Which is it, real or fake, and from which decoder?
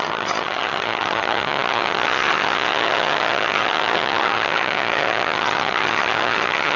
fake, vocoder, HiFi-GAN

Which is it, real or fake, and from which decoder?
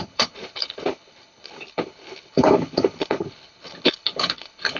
fake, codec, HILCodec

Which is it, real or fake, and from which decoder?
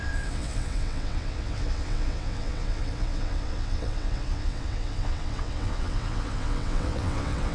fake, vocoder, WaveNeXt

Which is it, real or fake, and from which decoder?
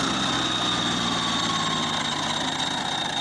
real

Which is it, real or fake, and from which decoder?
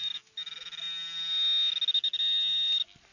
real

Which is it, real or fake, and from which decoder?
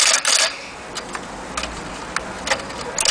real